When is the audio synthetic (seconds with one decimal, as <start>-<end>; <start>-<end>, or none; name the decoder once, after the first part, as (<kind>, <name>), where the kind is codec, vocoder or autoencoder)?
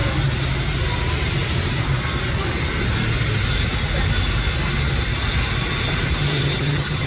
6.2-7.1 (vocoder, HiFi-GAN)